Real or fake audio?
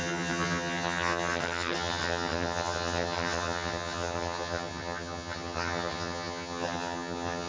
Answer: fake